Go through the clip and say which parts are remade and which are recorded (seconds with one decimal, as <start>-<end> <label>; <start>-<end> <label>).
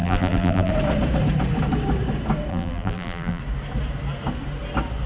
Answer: 0.0-0.7 remade; 0.7-2.5 recorded; 2.5-3.4 remade; 3.4-5.1 recorded